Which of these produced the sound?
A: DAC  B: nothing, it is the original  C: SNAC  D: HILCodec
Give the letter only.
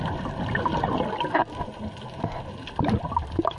B